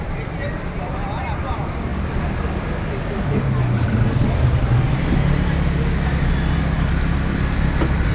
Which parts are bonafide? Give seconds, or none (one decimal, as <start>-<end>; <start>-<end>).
0.0-8.1